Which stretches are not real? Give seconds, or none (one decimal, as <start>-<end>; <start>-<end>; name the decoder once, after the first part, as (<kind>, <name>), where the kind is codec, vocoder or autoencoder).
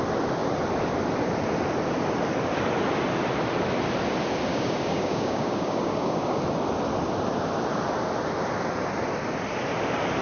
4.5-6.4 (codec, DAC)